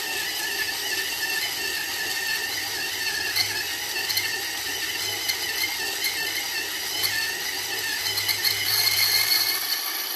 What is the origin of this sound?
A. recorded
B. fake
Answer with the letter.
A